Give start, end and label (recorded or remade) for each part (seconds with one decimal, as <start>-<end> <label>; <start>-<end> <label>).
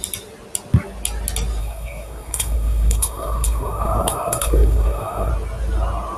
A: 0.0-1.6 recorded; 1.6-5.3 remade; 5.3-6.2 recorded